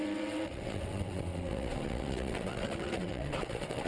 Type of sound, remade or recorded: remade